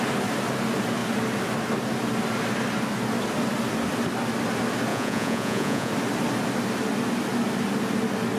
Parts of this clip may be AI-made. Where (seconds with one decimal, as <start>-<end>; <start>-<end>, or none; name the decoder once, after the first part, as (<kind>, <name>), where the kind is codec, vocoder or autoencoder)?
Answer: 4.9-5.9 (vocoder, Vocos)